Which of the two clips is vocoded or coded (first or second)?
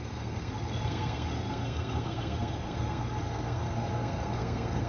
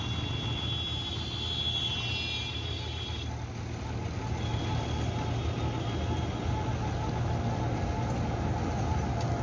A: first